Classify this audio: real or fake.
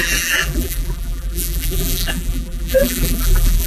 fake